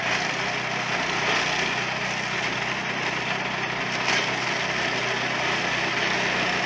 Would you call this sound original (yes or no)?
yes